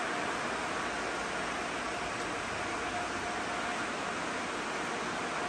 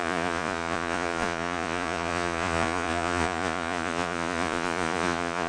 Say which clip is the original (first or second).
first